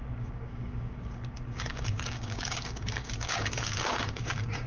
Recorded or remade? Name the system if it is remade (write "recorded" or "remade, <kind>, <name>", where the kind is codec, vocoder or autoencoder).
remade, codec, DAC